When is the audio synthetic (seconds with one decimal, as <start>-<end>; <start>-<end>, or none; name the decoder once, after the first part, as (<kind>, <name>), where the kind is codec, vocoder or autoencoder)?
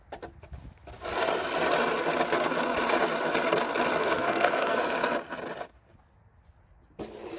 4.0-4.8 (codec, SNAC)